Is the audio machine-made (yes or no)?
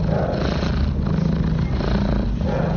no